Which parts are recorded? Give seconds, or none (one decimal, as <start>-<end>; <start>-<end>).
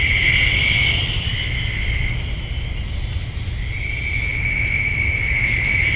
0.0-6.0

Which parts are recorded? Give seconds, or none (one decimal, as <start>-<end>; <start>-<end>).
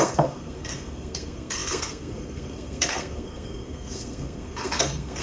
none